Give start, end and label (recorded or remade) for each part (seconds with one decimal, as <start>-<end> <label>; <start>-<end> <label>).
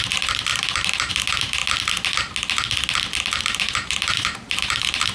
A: 0.0-1.6 remade; 1.6-3.4 recorded; 3.4-5.1 remade